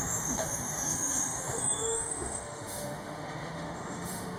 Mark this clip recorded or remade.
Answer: remade